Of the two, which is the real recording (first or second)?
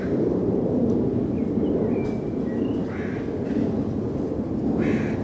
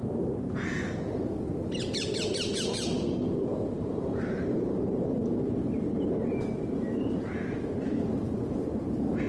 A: first